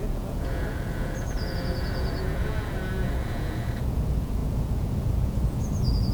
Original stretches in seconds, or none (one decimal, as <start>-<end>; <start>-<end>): none